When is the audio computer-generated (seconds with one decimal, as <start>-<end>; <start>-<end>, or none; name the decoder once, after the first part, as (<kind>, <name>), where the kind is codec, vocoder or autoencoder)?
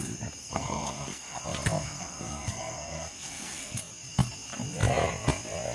0.4-1.4 (codec, SNAC); 1.8-3.8